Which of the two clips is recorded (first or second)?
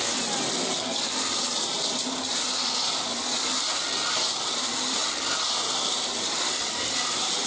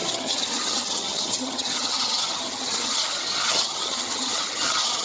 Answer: first